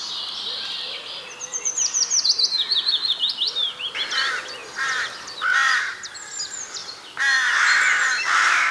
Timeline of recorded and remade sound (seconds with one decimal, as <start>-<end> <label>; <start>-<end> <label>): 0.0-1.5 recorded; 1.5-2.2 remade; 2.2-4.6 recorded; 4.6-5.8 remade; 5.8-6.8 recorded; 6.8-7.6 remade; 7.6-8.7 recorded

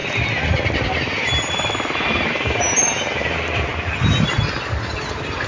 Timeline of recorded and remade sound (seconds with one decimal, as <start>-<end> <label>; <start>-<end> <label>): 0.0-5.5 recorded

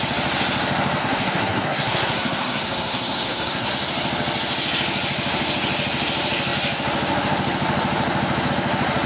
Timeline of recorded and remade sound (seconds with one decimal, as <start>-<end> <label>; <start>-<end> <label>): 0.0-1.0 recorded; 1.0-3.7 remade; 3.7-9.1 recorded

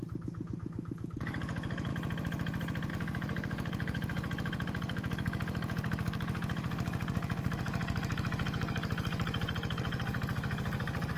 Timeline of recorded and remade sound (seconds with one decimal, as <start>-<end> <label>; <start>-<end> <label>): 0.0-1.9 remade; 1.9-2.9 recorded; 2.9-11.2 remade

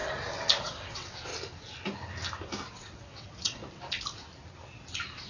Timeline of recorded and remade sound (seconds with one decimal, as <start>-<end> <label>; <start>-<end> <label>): 0.0-0.6 recorded; 0.6-1.3 remade; 1.3-2.7 recorded; 2.7-3.6 remade; 3.6-5.3 recorded